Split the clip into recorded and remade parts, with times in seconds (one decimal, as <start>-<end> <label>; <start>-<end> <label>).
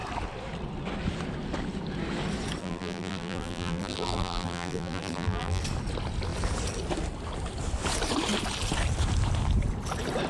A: 0.0-2.6 recorded; 2.6-5.6 remade; 5.6-10.3 recorded